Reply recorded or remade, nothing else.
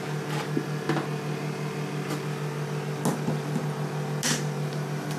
recorded